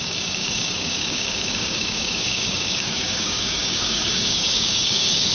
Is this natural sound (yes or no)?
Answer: no